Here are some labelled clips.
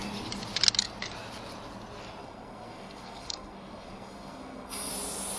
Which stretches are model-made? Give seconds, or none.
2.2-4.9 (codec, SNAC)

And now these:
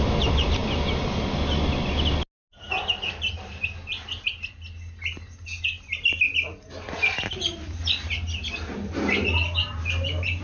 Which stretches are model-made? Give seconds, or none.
none

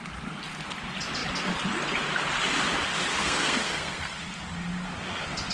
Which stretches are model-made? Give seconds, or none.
3.2-4.2 (codec, SNAC)

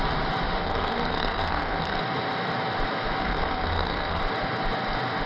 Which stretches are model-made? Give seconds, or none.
0.6-2.0 (codec, SNAC); 3.2-4.2

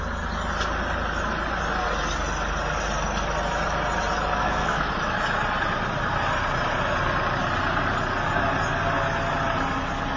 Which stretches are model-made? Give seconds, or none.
4.4-4.9 (codec, SNAC)

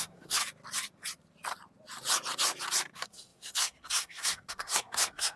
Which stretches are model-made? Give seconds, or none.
0.0-0.4 (codec, SNAC); 2.9-5.4